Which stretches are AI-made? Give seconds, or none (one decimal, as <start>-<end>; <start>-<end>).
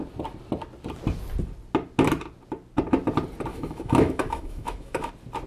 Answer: 3.5-5.1